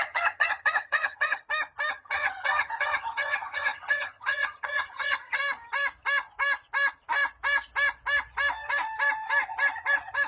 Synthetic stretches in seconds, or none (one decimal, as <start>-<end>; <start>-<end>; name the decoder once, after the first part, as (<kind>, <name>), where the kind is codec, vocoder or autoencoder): 0.0-1.4 (vocoder, HiFi-GAN); 1.9-5.4